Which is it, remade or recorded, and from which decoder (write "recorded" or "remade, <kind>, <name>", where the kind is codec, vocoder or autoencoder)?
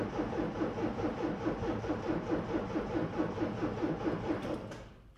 recorded